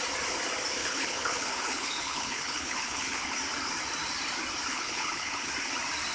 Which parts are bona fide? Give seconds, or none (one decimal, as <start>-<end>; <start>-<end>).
0.0-0.8; 3.2-4.7; 5.5-6.1